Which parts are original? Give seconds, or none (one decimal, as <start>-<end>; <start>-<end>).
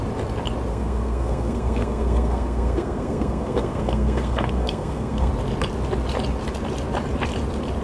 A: 0.0-0.7; 5.3-7.8